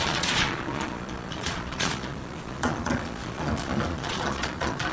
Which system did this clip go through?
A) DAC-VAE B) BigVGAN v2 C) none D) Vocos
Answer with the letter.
D